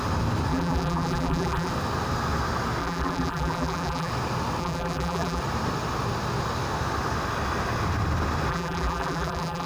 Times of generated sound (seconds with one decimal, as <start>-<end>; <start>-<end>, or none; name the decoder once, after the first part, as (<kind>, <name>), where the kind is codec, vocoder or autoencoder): 0.5-1.7 (vocoder, BigVGAN v2); 2.8-4.1; 4.6-5.4; 8.5-9.7